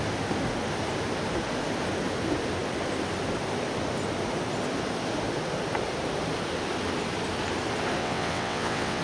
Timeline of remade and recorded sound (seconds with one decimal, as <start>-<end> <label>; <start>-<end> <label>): 0.0-8.0 recorded; 8.0-9.0 remade